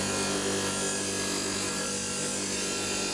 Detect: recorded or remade recorded